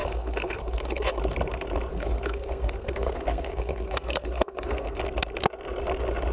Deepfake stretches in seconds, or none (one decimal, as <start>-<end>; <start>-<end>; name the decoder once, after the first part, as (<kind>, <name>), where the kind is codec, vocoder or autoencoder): 0.0-1.2 (codec, SNAC); 1.9-5.0